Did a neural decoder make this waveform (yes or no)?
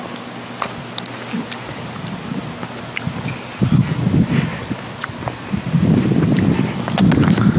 no